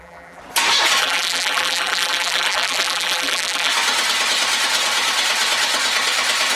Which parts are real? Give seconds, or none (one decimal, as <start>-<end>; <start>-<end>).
0.4-1.0; 3.7-6.6